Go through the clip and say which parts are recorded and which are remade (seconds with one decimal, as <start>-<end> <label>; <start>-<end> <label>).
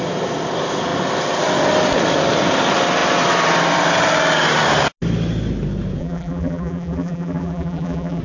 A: 0.0-6.0 recorded; 6.0-8.2 remade